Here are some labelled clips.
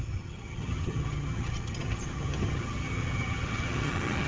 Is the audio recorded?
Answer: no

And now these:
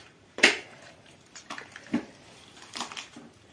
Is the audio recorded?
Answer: no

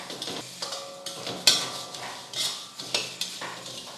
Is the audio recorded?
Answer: yes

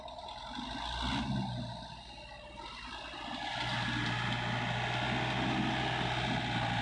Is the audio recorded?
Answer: yes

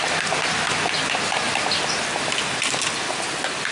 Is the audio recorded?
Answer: yes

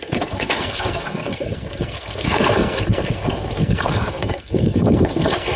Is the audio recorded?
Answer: no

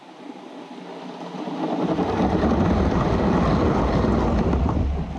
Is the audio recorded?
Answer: yes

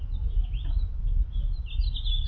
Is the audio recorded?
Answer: yes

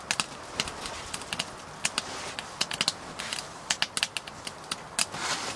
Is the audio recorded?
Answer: yes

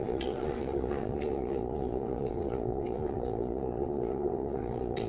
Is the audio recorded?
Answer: no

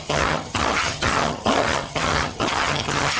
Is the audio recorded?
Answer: no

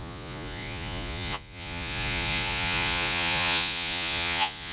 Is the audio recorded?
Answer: no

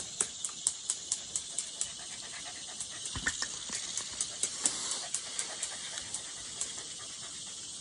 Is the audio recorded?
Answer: yes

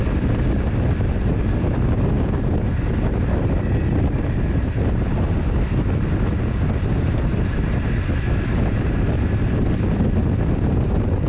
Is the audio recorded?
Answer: yes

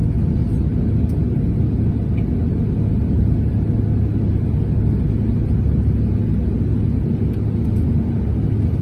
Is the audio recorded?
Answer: yes